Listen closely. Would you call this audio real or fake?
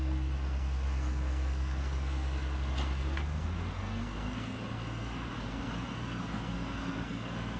fake